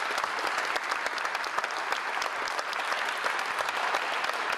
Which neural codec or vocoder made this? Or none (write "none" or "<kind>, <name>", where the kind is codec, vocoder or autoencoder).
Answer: none